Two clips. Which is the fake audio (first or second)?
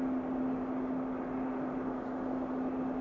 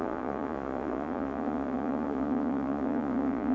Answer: second